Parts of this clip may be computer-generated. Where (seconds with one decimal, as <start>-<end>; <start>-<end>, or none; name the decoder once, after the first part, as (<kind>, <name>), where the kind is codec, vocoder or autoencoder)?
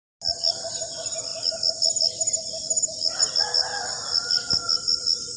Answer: none